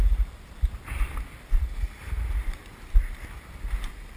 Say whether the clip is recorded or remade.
recorded